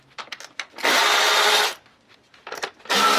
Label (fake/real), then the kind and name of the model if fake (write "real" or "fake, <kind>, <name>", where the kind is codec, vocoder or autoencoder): real